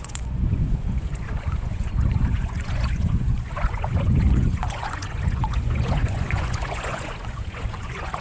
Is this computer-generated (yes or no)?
yes